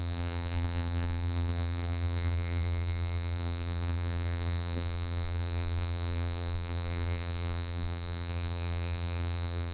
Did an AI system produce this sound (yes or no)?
yes